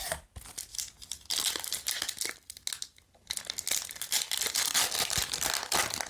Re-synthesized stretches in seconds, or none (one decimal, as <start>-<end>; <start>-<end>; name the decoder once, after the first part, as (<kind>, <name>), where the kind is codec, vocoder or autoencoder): none